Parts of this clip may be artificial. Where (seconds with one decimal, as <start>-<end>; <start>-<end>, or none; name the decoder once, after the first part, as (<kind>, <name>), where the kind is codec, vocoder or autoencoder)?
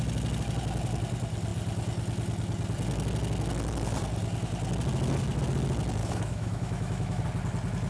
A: 6.0-7.2 (autoencoder, DAC-VAE)